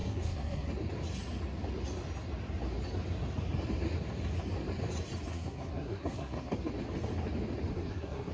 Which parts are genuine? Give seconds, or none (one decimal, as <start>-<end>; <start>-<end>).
0.7-5.3; 6.7-7.7